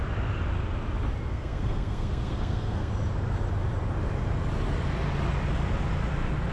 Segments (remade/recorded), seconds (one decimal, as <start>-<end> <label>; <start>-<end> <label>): 0.0-1.3 recorded; 1.3-2.9 remade; 2.9-6.5 recorded